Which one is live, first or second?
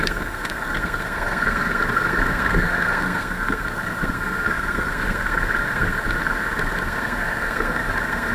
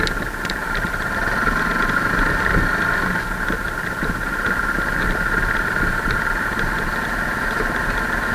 second